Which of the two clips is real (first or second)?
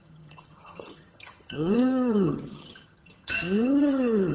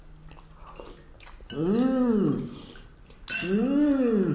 second